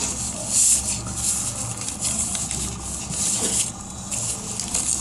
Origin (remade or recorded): recorded